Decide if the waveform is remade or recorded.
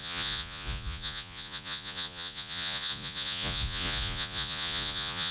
remade